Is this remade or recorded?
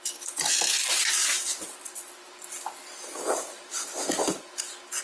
recorded